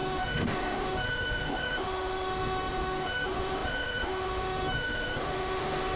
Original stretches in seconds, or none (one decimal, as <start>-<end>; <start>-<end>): none